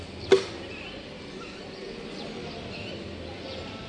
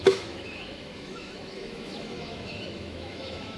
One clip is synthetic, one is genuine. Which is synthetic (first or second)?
second